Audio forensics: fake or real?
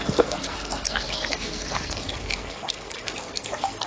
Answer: fake